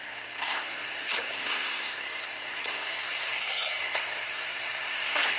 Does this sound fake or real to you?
fake